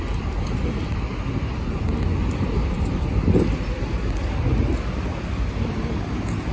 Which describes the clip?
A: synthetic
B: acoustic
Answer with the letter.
B